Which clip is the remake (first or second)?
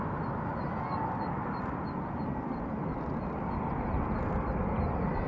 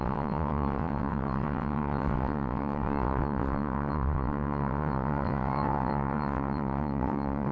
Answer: second